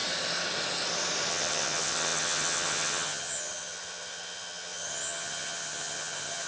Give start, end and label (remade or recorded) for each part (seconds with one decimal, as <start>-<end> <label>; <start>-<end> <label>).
0.0-1.3 recorded; 1.3-6.5 remade